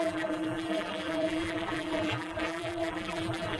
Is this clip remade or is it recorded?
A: remade